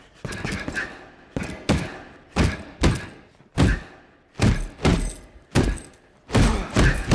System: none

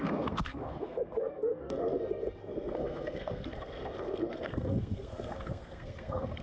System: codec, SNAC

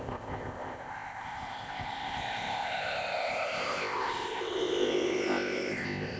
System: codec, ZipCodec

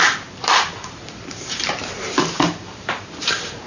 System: vocoder, BigVGAN v2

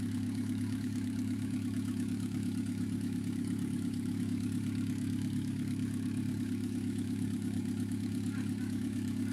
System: codec, DAC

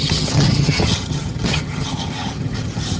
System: vocoder, HiFi-GAN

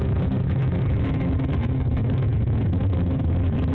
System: autoencoder, DAC-VAE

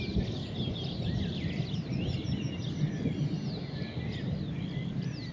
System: none